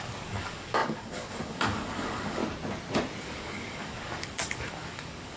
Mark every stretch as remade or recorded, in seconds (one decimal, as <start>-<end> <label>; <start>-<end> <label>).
0.0-2.4 remade; 2.4-3.2 recorded; 3.2-5.4 remade